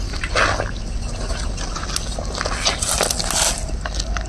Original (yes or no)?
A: yes